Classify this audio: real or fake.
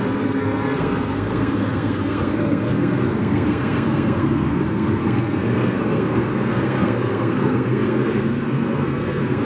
fake